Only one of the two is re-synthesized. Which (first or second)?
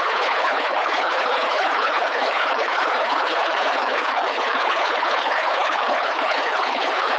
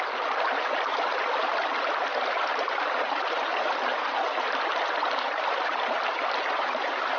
first